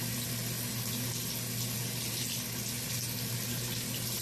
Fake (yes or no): no